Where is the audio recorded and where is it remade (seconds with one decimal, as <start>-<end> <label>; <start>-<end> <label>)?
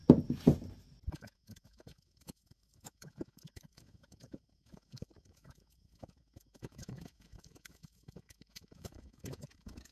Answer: 0.0-1.1 recorded; 1.1-9.9 remade